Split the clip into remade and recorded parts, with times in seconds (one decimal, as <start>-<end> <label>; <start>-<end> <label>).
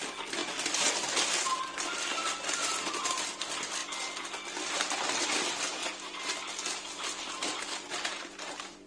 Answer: 0.0-8.9 recorded